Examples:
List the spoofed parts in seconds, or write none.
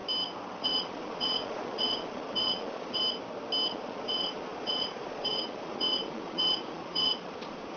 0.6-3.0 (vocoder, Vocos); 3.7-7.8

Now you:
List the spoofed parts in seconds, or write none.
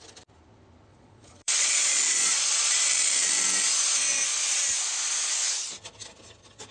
0.9-2.8 (vocoder, Vocos)